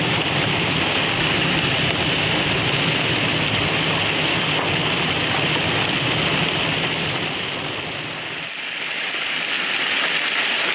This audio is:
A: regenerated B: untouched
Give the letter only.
B